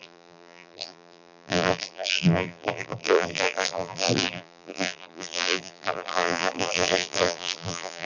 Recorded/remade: remade